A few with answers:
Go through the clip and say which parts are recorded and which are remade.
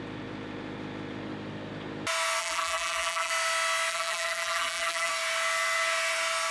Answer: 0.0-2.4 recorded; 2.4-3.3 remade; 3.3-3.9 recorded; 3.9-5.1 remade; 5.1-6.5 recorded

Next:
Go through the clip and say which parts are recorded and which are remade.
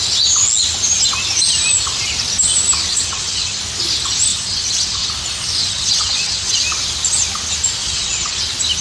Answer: 0.0-2.9 recorded; 2.9-3.6 remade; 3.6-4.3 recorded; 4.3-5.1 remade; 5.1-5.6 recorded; 5.6-6.6 remade; 6.6-7.8 recorded; 7.8-8.4 remade; 8.4-8.8 recorded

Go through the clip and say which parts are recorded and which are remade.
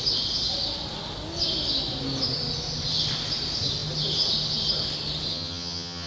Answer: 0.0-5.3 recorded; 5.3-6.1 remade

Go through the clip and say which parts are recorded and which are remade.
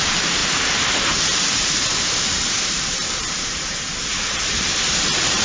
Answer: 0.0-5.4 remade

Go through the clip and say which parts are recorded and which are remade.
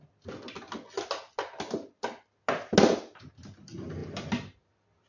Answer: 0.0-5.1 recorded